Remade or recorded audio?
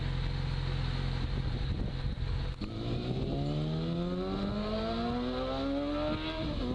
recorded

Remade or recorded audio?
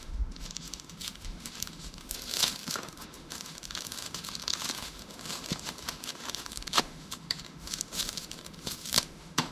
remade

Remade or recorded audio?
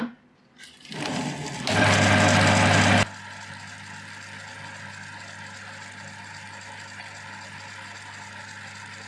recorded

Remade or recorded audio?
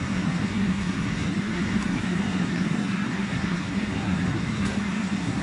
remade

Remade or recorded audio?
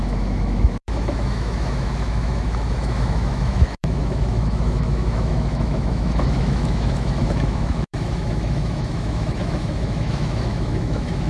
remade